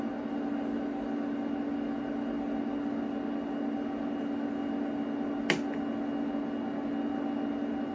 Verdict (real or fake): real